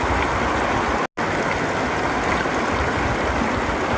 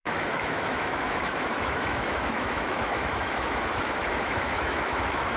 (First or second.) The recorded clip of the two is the first